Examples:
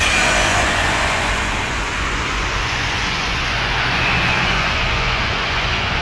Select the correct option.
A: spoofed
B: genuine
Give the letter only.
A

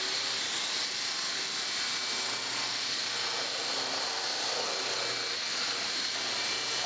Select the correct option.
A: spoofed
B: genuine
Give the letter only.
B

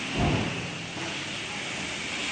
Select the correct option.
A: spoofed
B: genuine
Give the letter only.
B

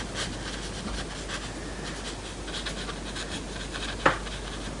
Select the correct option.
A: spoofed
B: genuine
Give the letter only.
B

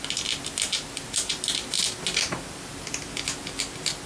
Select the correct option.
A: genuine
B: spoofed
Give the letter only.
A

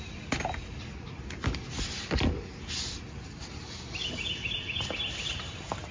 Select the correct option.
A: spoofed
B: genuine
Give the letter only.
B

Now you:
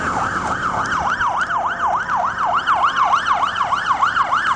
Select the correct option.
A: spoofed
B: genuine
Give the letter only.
B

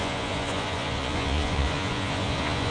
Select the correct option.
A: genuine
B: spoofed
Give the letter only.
B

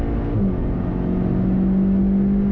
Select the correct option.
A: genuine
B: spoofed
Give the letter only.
A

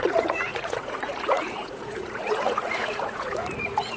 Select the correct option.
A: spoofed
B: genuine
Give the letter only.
A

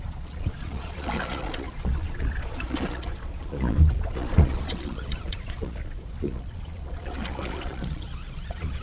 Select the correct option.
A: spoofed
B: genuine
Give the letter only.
A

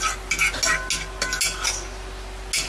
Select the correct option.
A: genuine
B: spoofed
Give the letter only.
A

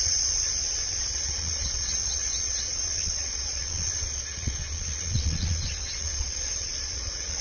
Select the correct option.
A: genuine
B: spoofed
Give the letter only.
B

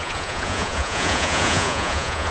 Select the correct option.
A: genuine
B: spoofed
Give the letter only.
B